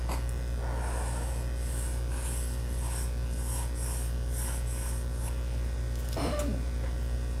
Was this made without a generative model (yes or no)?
no